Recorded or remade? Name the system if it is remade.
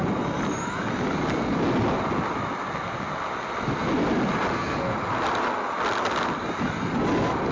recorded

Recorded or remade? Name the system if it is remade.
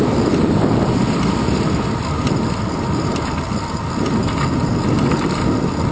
recorded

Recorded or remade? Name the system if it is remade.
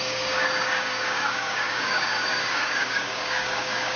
remade, codec, DAC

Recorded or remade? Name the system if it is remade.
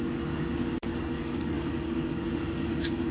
remade, codec, DAC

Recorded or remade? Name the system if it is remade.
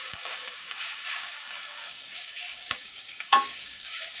remade, codec, DAC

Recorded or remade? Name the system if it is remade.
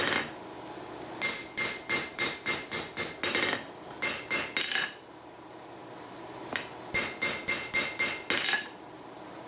recorded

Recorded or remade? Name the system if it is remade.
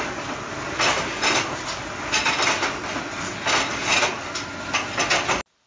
recorded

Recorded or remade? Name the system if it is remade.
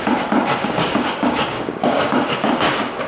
remade, codec, DAC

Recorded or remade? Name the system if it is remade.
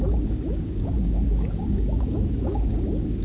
remade, codec, DAC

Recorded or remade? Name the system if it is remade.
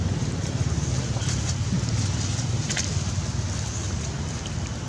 recorded